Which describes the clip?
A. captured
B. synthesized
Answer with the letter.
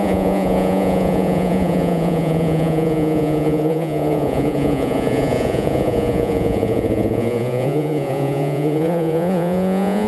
B